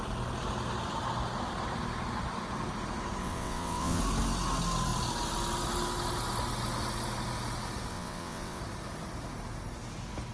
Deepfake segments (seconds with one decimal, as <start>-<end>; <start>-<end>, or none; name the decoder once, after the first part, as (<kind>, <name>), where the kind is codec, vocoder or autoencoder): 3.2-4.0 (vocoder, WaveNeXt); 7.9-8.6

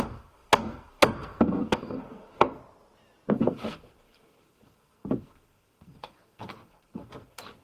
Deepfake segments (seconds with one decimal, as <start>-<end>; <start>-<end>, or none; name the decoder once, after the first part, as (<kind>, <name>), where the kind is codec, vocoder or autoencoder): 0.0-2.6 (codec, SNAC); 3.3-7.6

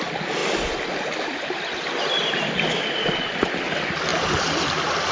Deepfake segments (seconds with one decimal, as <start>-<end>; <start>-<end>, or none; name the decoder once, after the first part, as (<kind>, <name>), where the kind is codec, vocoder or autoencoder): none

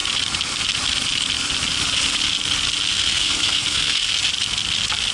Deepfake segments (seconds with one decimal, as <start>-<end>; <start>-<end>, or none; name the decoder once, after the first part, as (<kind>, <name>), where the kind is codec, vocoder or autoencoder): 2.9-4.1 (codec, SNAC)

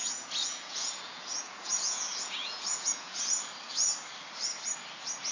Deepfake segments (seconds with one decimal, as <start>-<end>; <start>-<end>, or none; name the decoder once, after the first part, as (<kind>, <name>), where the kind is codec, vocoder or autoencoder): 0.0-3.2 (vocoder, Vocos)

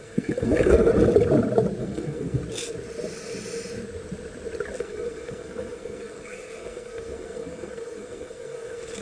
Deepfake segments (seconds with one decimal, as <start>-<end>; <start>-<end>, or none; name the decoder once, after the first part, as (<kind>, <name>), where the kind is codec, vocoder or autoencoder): 0.0-0.9 (codec, SNAC); 1.8-2.4; 4.8-9.0